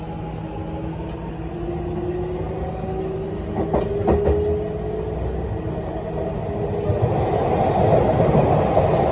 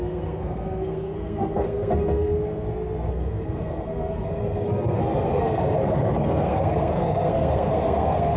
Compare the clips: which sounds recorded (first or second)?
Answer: first